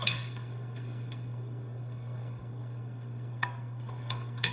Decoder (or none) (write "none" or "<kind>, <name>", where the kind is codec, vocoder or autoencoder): codec, SNAC